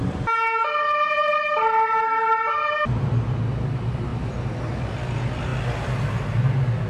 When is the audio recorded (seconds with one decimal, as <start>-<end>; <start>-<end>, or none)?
0.0-6.9